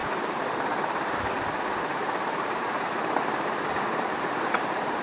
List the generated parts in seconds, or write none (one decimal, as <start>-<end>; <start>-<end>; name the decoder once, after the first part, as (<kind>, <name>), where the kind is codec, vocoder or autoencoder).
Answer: 0.0-1.3 (vocoder, BigVGAN v2); 2.0-5.0